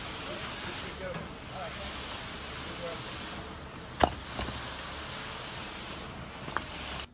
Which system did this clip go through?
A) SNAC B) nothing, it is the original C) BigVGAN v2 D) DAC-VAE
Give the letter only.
B